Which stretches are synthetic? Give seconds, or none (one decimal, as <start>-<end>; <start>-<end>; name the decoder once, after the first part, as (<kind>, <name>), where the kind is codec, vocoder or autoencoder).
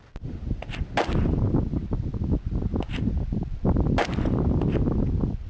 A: none